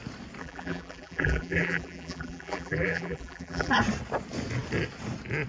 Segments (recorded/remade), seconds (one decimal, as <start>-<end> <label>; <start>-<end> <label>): 0.0-0.4 recorded; 0.4-3.7 remade; 3.7-5.5 recorded